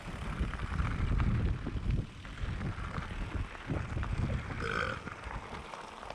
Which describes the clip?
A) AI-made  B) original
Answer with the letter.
B